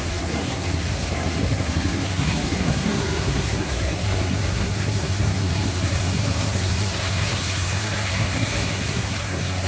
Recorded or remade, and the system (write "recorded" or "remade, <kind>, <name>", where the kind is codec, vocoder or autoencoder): remade, codec, SNAC